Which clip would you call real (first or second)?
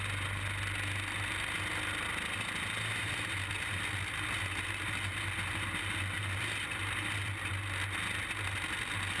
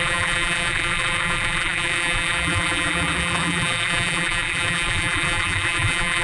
first